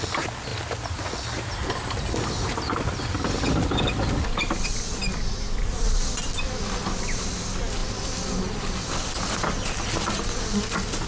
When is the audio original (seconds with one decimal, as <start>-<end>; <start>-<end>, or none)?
0.0-11.1